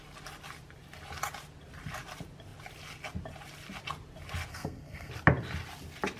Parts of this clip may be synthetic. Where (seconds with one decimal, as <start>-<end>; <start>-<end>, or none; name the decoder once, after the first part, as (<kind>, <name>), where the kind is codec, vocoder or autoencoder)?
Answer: 4.5-5.1 (codec, SNAC)